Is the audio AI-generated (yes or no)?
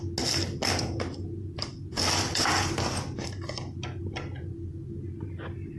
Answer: no